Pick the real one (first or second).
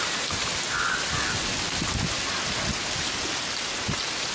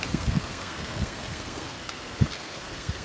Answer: first